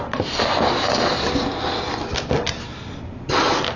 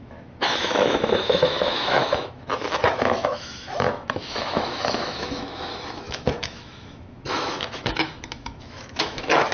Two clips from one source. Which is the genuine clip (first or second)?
first